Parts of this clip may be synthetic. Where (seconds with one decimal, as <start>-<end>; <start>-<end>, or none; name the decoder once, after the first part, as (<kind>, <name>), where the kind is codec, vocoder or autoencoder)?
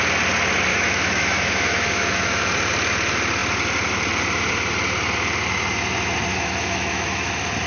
0.7-2.5 (autoencoder, DAC-VAE); 6.3-7.3